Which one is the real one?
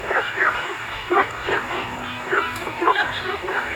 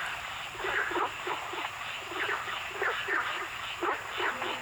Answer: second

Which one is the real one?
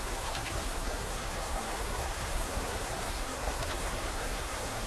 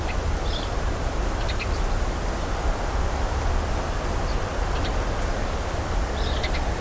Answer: second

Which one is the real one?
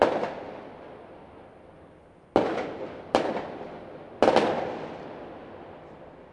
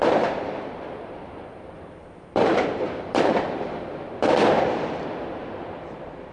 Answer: first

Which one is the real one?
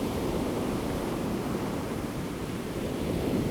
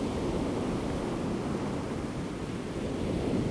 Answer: second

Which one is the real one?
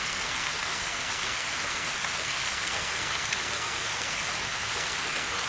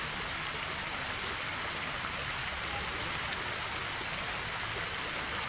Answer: second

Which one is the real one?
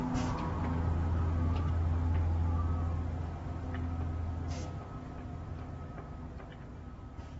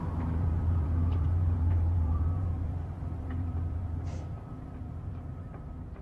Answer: first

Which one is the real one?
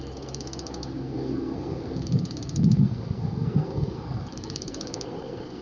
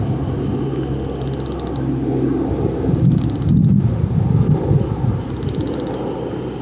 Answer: second